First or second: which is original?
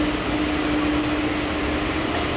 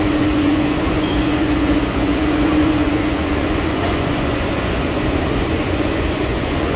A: first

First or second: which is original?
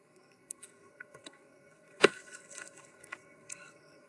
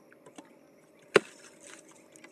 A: second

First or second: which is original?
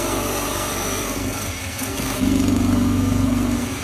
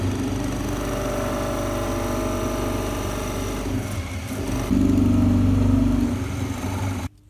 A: second